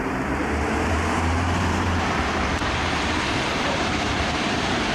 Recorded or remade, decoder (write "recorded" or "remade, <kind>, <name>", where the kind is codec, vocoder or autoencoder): remade, vocoder, BigVGAN v2